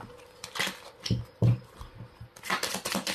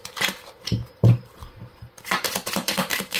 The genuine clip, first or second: first